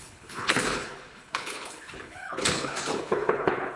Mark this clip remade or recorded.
remade